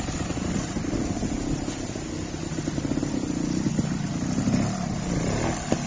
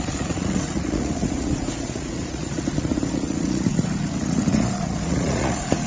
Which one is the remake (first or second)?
second